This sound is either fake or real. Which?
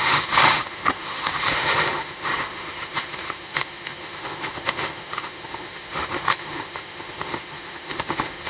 fake